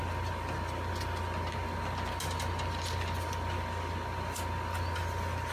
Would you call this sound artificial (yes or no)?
no